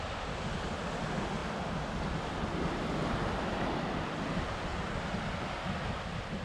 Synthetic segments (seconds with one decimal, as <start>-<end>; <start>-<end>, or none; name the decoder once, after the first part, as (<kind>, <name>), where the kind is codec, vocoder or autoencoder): none